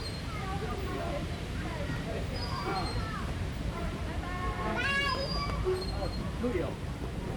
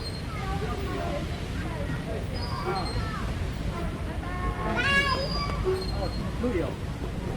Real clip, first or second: second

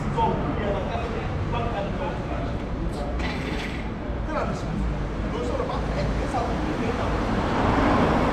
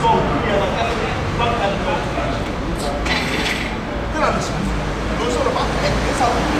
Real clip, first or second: second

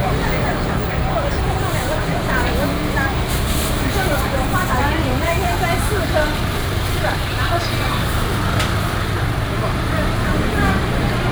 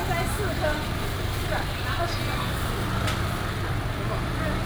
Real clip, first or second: second